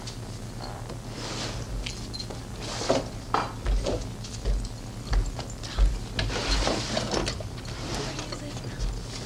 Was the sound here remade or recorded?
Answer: recorded